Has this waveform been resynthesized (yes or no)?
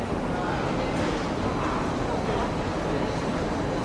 no